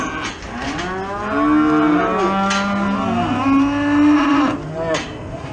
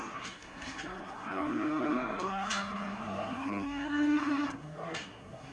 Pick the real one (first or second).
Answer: first